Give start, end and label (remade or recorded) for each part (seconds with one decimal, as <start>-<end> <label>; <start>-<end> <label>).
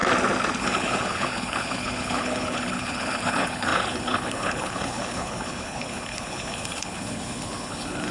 0.0-0.6 recorded; 0.6-8.1 remade